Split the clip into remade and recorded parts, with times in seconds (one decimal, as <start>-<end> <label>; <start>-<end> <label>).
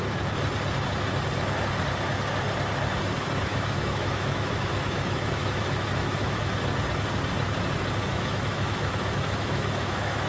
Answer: 0.0-3.5 recorded; 3.5-6.4 remade; 6.4-8.1 recorded; 8.1-10.3 remade